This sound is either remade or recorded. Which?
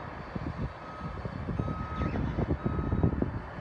recorded